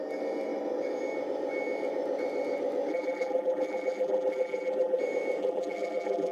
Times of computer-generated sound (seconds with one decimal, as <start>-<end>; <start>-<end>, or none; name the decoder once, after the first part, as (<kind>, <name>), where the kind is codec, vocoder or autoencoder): 2.9-5.0 (vocoder, BigVGAN v2); 5.4-6.3